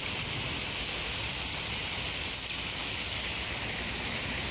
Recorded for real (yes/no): yes